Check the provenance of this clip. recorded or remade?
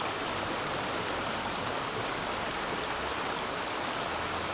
recorded